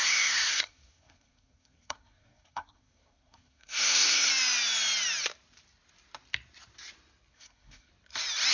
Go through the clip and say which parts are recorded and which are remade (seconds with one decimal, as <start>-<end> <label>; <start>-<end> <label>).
0.0-4.3 remade; 4.3-7.3 recorded; 7.3-7.9 remade; 7.9-8.5 recorded